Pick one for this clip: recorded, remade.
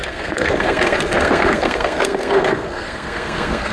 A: remade